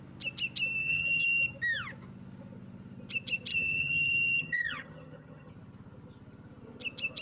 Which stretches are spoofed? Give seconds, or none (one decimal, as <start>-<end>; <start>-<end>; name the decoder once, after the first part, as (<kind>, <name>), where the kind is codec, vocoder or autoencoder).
0.8-1.4 (vocoder, HiFi-GAN); 3.5-5.5